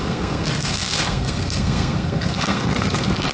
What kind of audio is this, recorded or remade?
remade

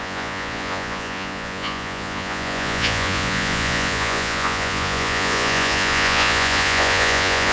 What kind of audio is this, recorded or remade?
remade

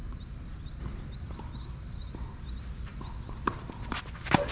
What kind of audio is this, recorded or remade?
recorded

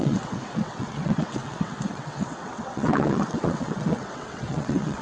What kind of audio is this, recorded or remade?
remade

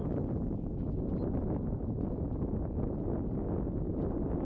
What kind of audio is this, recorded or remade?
recorded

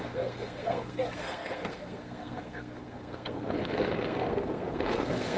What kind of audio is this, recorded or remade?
remade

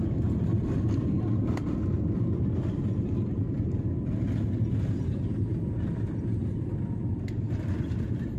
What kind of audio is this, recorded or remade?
recorded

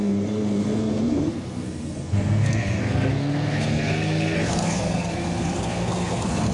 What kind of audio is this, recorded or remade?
remade